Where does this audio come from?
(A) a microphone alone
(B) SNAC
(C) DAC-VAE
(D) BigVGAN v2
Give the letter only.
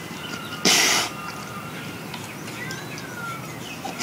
A